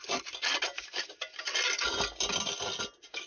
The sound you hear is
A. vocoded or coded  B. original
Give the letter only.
B